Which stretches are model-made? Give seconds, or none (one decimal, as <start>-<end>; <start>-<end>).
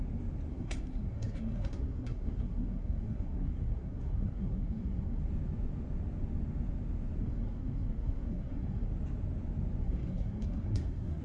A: 0.5-5.2; 7.2-8.9; 9.8-11.2